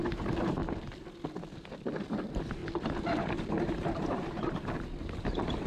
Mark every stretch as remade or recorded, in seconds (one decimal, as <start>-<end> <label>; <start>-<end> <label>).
0.0-0.6 remade; 0.6-2.1 recorded; 2.1-2.6 remade; 2.6-3.4 recorded; 3.4-5.7 remade